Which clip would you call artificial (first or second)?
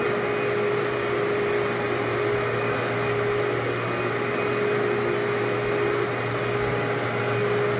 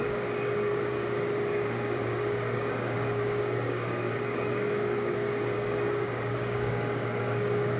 second